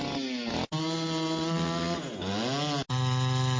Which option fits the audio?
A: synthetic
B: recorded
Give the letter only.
B